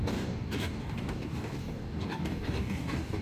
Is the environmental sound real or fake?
fake